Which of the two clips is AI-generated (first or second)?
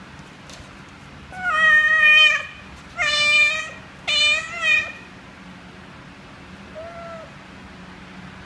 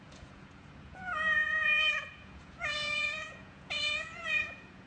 second